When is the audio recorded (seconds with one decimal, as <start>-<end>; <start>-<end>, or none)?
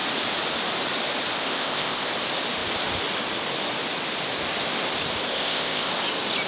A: 0.0-1.4; 2.1-5.3; 5.9-6.5